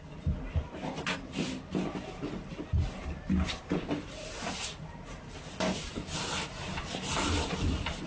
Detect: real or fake real